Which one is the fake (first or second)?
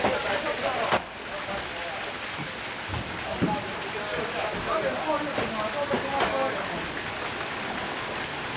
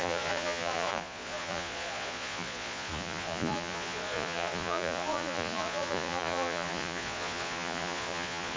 second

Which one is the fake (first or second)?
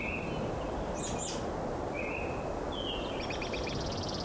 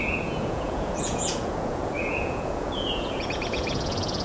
second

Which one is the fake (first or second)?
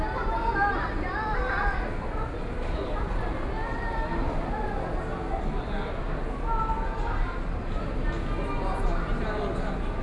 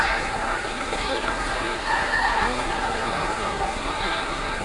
second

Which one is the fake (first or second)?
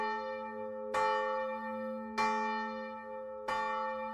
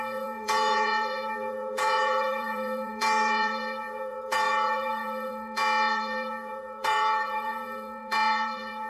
second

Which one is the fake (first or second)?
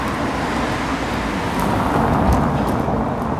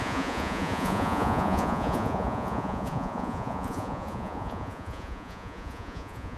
second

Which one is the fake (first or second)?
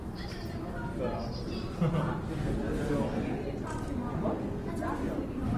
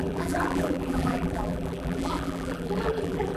second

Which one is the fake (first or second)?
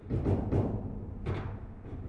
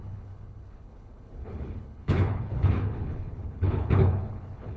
second